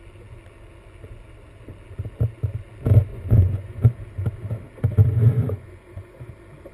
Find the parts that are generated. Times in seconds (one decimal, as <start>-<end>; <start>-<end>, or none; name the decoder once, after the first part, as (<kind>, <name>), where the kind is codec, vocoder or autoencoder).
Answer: 3.1-3.9 (vocoder, Vocos); 5.0-6.3